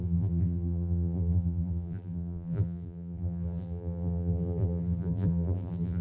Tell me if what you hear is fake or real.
fake